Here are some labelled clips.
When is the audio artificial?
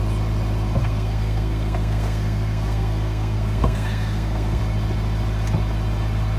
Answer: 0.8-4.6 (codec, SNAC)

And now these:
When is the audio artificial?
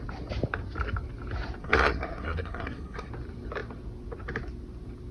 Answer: 1.6-3.1 (codec, SNAC)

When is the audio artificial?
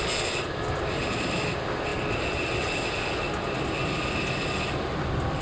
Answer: none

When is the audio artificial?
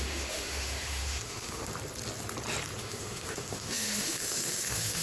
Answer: 0.0-1.7 (autoencoder, DAC-VAE); 2.8-5.0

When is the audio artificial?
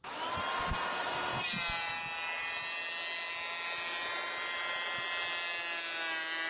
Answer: none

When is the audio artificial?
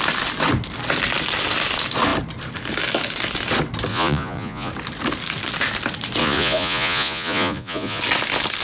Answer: 3.9-4.7 (vocoder, Vocos); 6.2-8.0